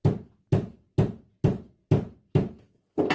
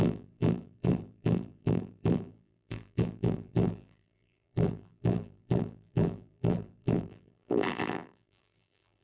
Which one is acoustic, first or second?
first